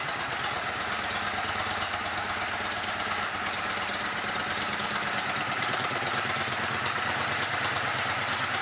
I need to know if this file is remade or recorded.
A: remade